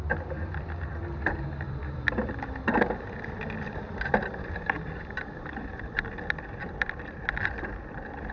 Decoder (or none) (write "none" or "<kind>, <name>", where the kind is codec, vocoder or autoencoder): vocoder, BigVGAN v2